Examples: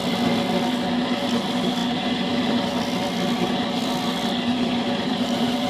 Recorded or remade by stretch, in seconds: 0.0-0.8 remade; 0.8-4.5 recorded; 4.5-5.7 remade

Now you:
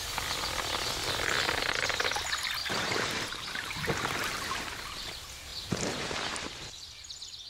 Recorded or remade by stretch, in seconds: 0.0-2.6 recorded; 2.6-5.1 remade; 5.1-5.5 recorded; 5.5-7.5 remade

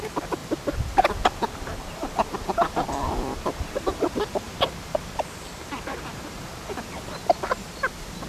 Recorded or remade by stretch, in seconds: 0.0-2.4 recorded; 2.4-6.9 remade; 6.9-8.3 recorded

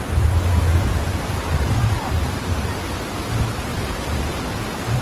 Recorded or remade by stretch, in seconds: 0.0-0.7 recorded; 0.7-3.1 remade; 3.1-3.7 recorded; 3.7-5.0 remade

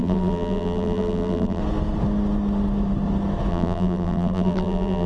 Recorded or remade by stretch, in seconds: 0.0-1.6 remade; 1.6-3.5 recorded; 3.5-5.1 remade

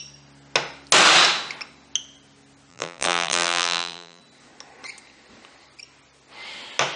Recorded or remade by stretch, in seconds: 0.0-2.7 recorded; 2.7-4.2 remade; 4.2-7.0 recorded

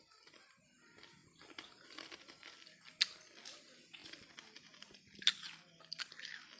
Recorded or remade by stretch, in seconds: 0.0-6.6 recorded

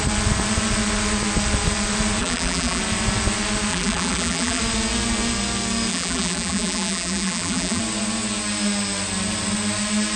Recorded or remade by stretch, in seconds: 0.0-2.2 recorded; 2.2-2.8 remade; 2.8-3.7 recorded; 3.7-4.6 remade; 4.6-5.9 recorded; 5.9-7.8 remade; 7.8-10.2 recorded